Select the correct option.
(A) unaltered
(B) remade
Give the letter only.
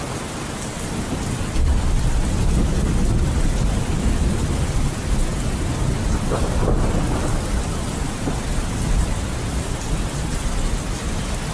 A